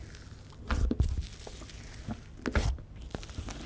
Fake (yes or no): no